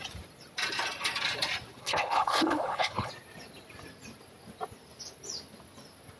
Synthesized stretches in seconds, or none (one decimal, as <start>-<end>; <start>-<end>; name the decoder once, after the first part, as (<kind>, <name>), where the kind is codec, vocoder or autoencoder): 1.8-3.1 (codec, HILCodec)